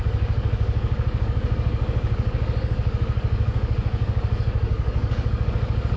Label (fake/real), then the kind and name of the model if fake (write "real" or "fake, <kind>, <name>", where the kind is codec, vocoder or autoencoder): fake, codec, DAC